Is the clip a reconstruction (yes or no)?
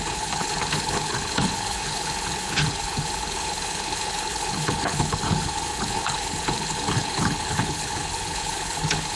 yes